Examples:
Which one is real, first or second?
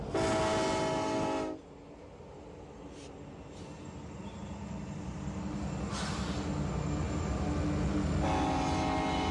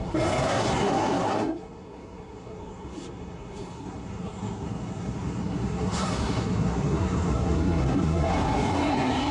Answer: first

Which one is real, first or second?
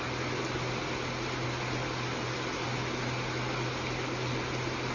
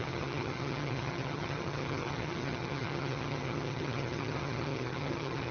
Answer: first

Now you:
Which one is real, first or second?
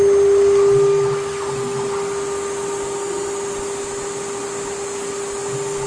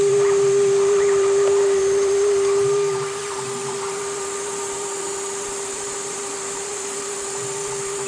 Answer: first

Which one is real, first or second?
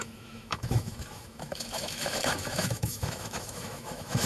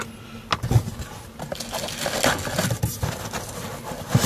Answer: second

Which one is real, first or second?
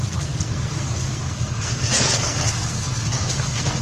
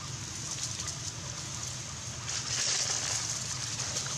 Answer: second